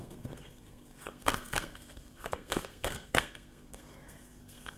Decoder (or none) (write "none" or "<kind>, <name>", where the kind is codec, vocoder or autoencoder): codec, SNAC